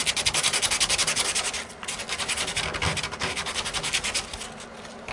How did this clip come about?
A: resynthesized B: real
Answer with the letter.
B